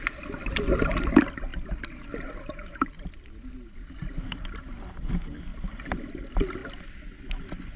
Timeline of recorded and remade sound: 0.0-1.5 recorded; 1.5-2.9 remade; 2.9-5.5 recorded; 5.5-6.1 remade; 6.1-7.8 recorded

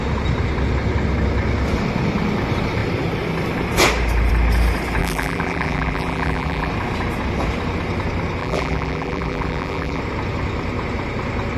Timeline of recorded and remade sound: 0.0-5.0 recorded; 5.0-6.7 remade; 6.7-8.4 recorded; 8.4-10.0 remade; 10.0-11.6 recorded